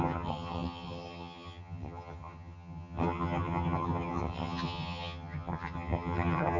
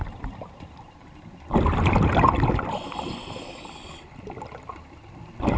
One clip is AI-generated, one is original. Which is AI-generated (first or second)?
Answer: first